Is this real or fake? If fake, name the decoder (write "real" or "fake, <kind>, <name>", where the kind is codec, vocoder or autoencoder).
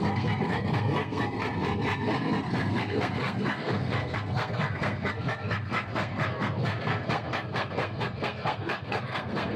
fake, codec, SNAC